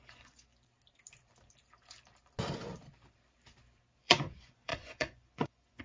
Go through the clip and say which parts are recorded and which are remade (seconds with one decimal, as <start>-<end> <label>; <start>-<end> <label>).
0.0-0.5 remade; 0.5-4.0 recorded; 4.0-5.8 remade